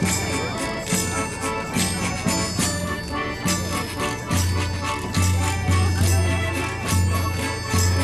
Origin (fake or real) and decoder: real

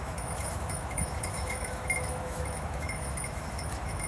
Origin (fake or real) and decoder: fake, autoencoder, DAC-VAE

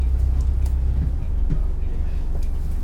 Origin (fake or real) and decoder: real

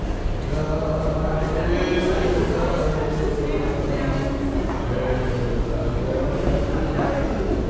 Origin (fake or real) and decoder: real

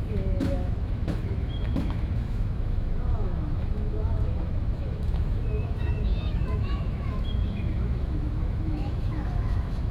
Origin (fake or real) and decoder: fake, autoencoder, DAC-VAE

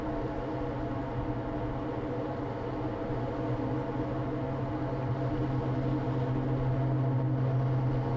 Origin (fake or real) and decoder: real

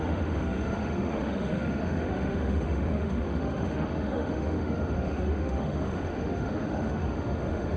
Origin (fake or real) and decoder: fake, autoencoder, DAC-VAE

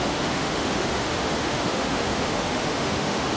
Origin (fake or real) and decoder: fake, autoencoder, DAC-VAE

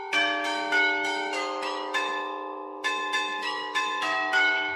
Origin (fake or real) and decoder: fake, autoencoder, DAC-VAE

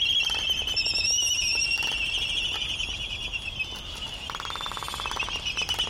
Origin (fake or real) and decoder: real